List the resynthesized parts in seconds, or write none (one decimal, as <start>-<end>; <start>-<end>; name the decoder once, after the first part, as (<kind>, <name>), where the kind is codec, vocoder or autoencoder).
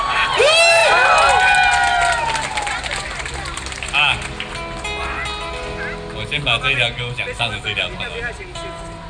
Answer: none